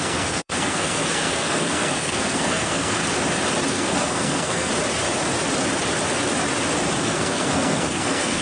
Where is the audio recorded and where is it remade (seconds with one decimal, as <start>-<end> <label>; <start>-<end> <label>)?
0.0-3.0 remade; 3.0-3.7 recorded; 3.7-4.7 remade; 4.7-7.0 recorded; 7.0-8.4 remade